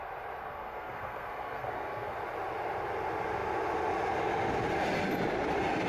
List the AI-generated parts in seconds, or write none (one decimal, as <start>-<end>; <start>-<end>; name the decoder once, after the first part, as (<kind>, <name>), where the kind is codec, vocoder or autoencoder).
0.4-2.2 (codec, SNAC)